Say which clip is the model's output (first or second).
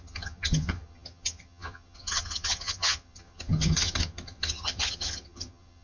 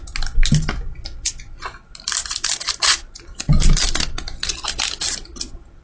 first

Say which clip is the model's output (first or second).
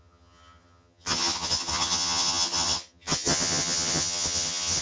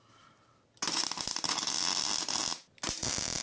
first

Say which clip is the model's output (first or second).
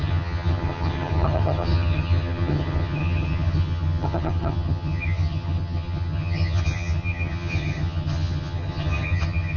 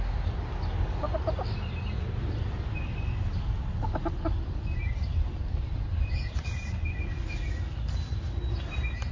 first